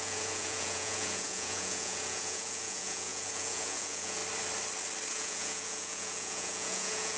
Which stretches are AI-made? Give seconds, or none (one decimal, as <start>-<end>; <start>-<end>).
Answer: 0.0-4.2; 5.1-7.2